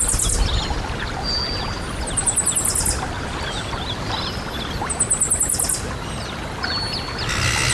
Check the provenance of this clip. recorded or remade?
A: recorded